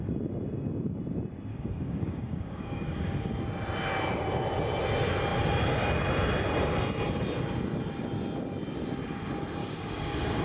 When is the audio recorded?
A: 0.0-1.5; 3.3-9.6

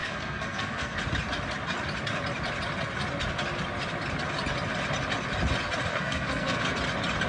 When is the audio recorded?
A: 1.0-5.9; 6.6-7.3

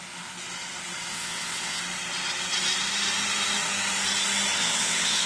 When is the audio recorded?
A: 0.0-1.1; 1.8-4.6